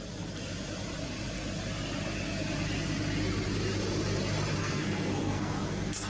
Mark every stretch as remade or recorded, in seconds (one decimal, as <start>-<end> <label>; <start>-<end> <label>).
0.0-4.6 recorded; 4.6-6.1 remade